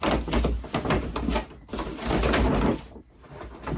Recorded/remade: recorded